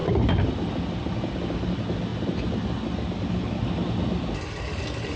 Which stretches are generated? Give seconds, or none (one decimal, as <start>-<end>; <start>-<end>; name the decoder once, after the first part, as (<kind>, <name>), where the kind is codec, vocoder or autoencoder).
0.0-1.1 (vocoder, BigVGAN v2)